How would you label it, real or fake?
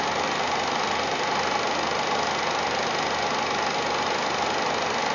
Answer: real